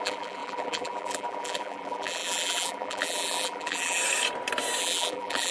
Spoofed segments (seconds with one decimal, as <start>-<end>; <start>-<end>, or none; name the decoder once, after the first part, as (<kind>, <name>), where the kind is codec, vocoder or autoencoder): 0.0-4.0 (vocoder, BigVGAN v2); 4.8-5.5